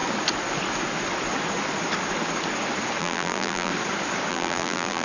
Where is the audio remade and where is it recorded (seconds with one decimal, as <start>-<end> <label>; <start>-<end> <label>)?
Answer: 0.0-3.0 recorded; 3.0-3.7 remade; 3.7-4.3 recorded; 4.3-5.0 remade